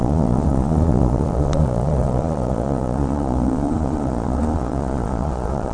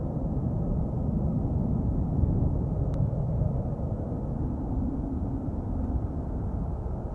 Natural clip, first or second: second